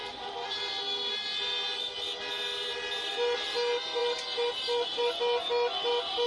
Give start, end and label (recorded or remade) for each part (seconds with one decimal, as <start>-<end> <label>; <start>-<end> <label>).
0.0-4.0 recorded; 4.0-5.2 remade; 5.2-6.3 recorded